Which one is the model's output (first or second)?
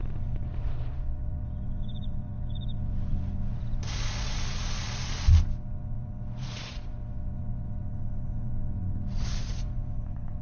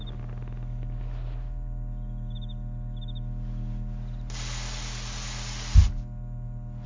first